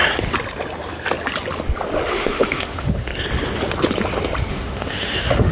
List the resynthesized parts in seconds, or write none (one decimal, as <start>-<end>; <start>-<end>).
2.1-3.1; 4.5-5.5

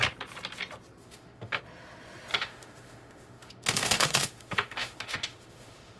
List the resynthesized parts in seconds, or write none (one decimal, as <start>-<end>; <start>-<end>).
1.0-1.6; 2.3-6.0

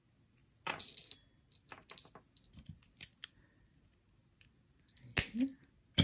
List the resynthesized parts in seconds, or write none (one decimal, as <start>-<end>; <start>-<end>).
none

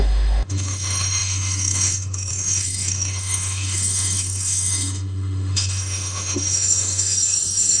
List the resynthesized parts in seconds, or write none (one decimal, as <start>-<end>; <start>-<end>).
0.0-7.8

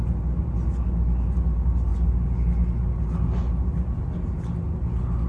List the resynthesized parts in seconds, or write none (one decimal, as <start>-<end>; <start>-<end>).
none